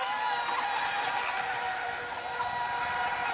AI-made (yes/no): no